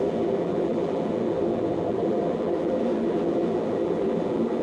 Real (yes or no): no